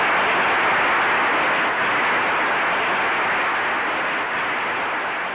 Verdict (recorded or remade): recorded